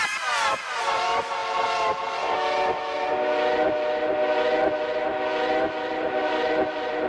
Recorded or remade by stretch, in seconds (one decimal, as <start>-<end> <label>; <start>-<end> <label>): 0.0-1.4 remade; 1.4-5.7 recorded; 5.7-7.1 remade